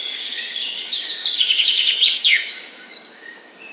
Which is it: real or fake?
fake